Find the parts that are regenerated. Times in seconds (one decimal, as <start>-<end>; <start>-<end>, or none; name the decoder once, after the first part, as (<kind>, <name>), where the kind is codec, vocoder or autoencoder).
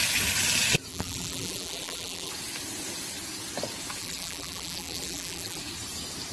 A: 0.9-2.3 (vocoder, BigVGAN v2); 4.0-5.6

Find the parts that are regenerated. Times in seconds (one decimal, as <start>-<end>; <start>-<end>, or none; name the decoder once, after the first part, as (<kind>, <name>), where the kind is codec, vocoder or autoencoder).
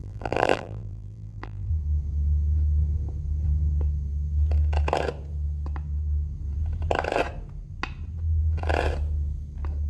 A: 0.0-1.7 (vocoder, BigVGAN v2)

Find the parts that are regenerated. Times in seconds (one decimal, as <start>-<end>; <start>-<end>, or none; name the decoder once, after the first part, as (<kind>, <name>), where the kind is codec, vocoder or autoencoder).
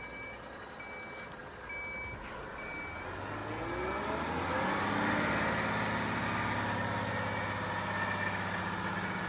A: none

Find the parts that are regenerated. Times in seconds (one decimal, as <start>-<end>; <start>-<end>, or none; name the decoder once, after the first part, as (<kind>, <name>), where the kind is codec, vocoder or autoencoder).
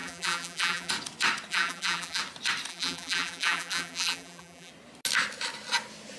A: 0.0-0.9 (vocoder, BigVGAN v2); 1.5-2.2; 2.7-4.7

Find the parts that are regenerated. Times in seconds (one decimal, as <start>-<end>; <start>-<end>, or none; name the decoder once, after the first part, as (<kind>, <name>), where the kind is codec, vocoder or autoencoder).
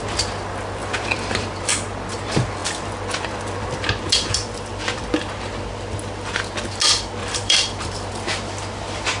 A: 0.8-1.7 (vocoder, BigVGAN v2); 2.6-5.0; 7.2-8.1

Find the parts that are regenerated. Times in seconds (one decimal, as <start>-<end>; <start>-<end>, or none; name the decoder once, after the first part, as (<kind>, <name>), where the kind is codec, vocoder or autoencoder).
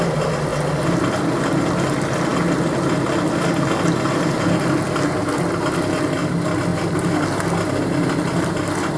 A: none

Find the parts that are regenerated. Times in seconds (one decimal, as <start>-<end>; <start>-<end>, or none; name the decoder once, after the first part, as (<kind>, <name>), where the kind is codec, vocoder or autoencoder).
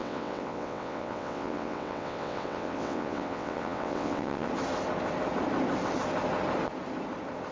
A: 0.0-4.5 (vocoder, WaveNeXt)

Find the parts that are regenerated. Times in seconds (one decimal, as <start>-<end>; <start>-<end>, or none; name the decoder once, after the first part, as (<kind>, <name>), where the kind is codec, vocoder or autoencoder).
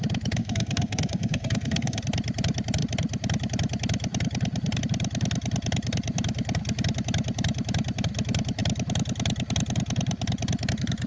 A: 0.4-2.0 (codec, SNAC)